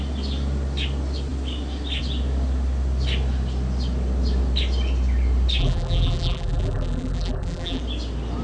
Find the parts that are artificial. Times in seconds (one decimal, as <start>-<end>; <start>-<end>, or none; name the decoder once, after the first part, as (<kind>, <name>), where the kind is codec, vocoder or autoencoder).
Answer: 5.6-7.8 (vocoder, BigVGAN v2)